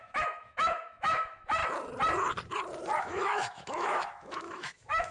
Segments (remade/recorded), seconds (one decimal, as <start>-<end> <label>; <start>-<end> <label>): 0.0-1.6 remade; 1.6-3.0 recorded; 3.0-5.1 remade